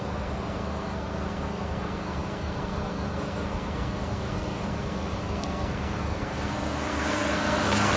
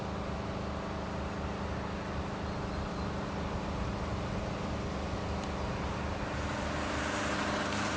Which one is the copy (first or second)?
first